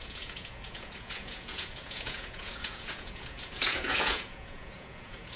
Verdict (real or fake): fake